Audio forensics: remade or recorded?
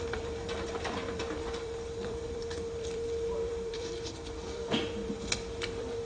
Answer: remade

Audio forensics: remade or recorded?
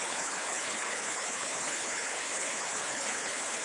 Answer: remade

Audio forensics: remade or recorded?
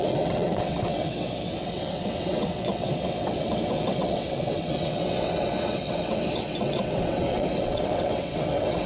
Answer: remade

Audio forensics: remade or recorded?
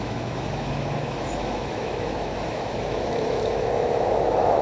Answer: remade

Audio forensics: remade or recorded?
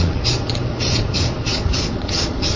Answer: remade